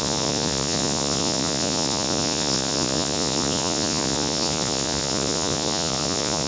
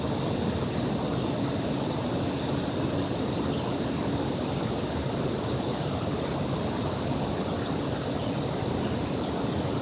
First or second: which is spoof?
first